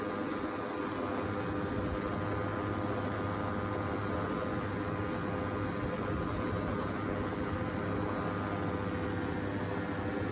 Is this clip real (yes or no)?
yes